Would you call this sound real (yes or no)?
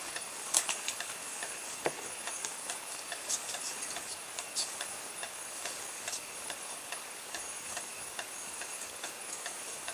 no